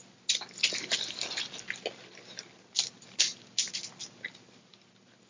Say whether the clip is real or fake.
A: real